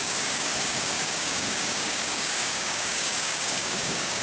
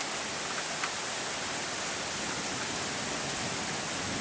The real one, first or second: second